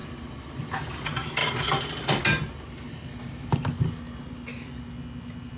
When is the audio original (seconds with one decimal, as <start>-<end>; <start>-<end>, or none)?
0.0-5.6